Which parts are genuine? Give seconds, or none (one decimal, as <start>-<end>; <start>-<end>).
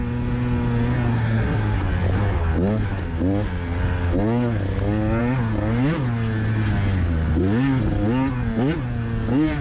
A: 0.0-1.1; 1.8-9.6